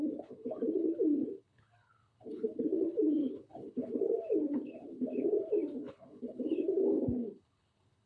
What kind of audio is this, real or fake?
fake